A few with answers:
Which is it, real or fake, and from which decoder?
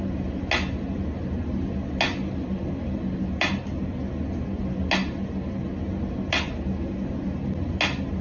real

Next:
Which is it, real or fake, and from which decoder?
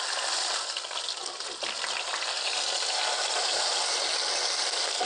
real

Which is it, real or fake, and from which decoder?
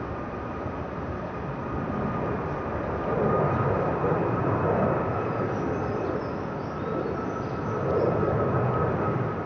real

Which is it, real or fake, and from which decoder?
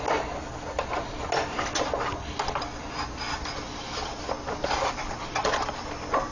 real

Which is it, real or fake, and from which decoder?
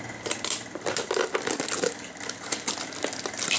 real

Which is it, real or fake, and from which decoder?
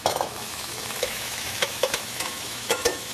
fake, autoencoder, DAC-VAE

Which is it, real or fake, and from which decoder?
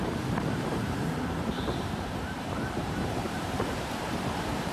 fake, vocoder, BigVGAN v2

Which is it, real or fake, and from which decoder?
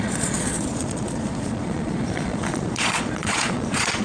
fake, vocoder, Vocos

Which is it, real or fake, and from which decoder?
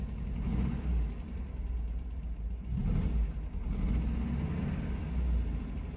real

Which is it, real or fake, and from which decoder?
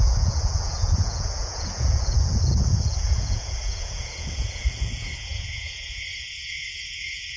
fake, vocoder, Vocos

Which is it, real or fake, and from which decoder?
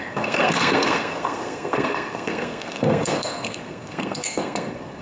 fake, codec, SNAC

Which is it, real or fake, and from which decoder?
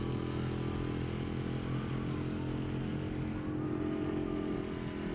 real